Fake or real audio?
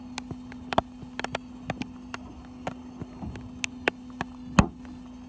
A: real